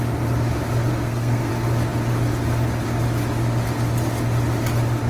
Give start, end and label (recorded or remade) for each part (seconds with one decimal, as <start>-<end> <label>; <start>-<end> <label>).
0.0-0.9 recorded; 0.9-1.5 remade; 1.5-5.1 recorded